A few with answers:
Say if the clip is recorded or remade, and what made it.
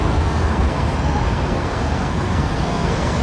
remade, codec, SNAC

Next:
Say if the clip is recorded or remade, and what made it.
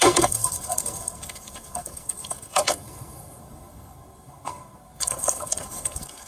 remade, codec, SNAC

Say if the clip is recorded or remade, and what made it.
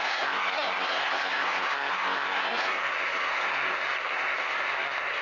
remade, codec, SNAC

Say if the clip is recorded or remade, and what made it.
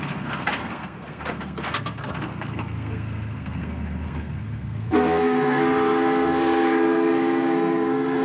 remade, codec, SNAC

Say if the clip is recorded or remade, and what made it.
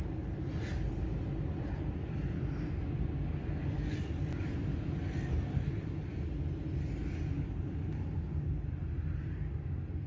recorded